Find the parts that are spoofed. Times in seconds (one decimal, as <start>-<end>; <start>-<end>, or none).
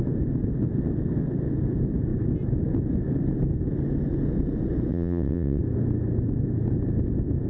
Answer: 4.9-5.6